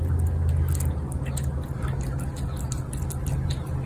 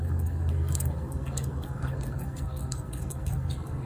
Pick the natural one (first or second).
first